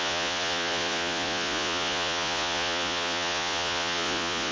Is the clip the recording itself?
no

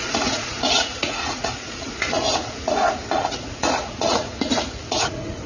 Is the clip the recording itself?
no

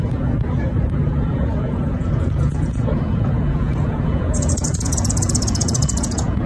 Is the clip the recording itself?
no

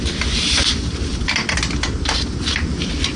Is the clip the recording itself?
yes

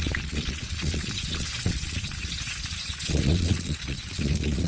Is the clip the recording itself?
no